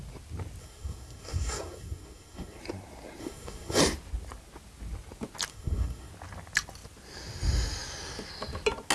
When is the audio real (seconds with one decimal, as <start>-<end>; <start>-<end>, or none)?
0.0-0.6; 2.6-3.2; 3.8-5.5; 6.1-8.9